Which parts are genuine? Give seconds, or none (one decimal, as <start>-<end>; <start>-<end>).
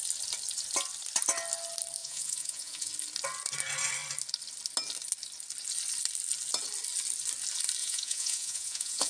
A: 0.0-2.0; 2.9-7.8